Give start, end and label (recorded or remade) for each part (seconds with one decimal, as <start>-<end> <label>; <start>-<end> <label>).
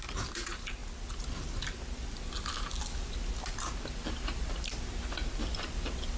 0.0-6.2 recorded